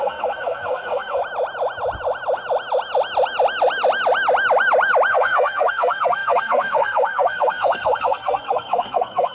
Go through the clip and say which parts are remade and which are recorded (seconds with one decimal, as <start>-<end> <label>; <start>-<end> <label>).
0.0-1.2 remade; 1.2-5.1 recorded; 5.1-9.3 remade